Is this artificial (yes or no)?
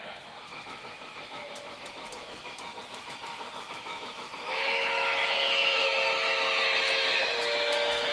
yes